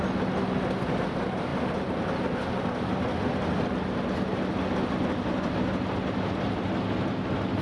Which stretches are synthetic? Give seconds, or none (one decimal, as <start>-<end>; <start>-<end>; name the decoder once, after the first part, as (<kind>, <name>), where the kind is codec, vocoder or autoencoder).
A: none